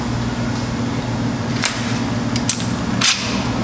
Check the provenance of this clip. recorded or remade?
recorded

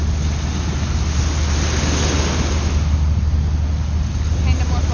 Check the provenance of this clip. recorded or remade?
recorded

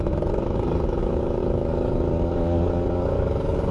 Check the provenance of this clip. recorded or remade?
remade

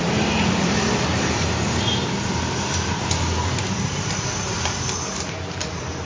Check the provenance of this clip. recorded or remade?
remade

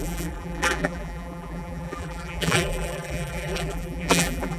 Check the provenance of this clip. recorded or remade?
remade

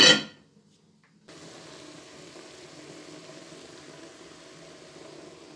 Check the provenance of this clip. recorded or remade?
recorded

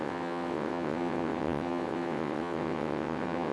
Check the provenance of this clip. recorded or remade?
remade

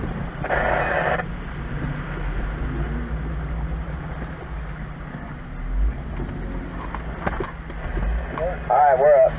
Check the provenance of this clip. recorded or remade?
recorded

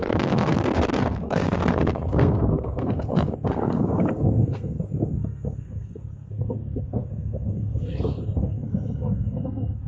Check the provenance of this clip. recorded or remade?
remade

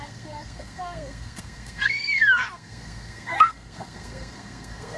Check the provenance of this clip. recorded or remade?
remade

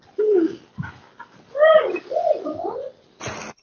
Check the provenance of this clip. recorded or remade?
recorded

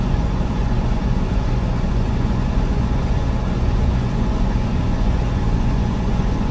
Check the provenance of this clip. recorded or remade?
remade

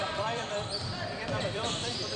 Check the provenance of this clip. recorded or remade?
remade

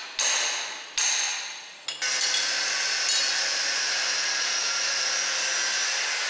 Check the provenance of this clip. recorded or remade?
recorded